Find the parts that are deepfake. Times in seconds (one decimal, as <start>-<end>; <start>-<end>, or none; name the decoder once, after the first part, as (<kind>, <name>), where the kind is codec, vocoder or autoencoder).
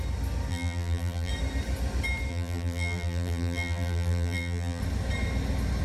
0.5-1.3 (vocoder, BigVGAN v2); 2.3-4.8